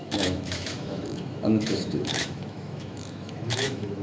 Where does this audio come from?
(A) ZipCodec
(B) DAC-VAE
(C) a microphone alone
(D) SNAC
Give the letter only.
B